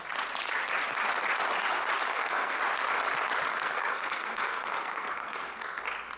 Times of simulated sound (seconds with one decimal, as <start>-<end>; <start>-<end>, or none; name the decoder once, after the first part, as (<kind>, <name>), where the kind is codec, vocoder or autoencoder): 2.1-2.6 (codec, SNAC); 3.5-5.8